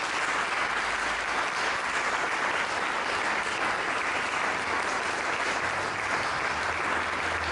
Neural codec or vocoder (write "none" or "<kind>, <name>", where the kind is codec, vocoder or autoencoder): none